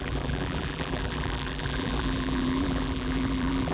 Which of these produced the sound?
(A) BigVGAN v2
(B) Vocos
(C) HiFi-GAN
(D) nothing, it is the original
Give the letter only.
A